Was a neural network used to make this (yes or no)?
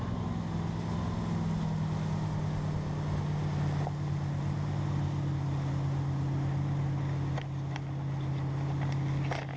no